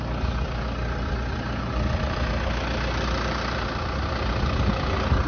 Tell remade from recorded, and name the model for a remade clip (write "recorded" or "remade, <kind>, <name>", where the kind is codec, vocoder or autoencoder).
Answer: recorded